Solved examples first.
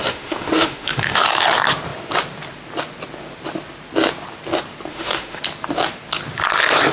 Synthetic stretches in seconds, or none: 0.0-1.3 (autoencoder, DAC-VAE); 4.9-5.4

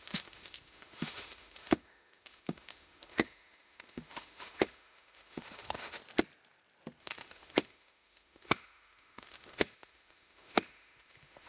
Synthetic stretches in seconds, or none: 0.0-6.0 (autoencoder, DAC-VAE); 7.0-11.5

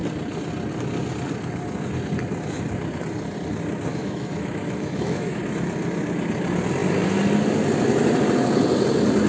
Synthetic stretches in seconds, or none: 3.9-5.4 (autoencoder, DAC-VAE)

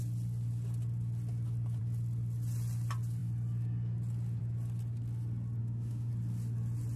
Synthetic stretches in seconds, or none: 5.6-6.1 (autoencoder, DAC-VAE)

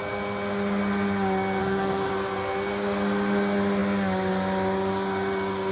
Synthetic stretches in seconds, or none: 1.6-2.1 (autoencoder, DAC-VAE)

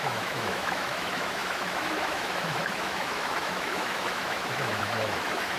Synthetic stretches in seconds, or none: 0.0-5.6 (autoencoder, DAC-VAE)

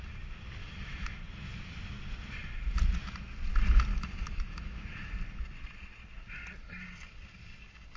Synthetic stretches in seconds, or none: 0.6-1.2 (autoencoder, DAC-VAE); 3.9-5.1

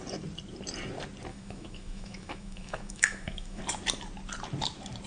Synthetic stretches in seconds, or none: 1.3-3.6 (autoencoder, DAC-VAE)